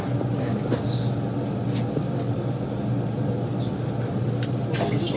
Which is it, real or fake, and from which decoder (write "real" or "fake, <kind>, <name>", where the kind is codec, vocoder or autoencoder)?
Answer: real